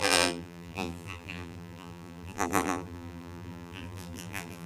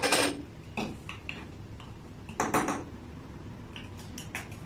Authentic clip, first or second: second